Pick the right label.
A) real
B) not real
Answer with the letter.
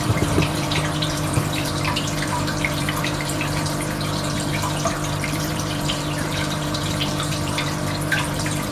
B